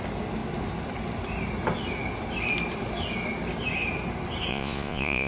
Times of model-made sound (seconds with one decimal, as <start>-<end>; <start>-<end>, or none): 4.5-5.3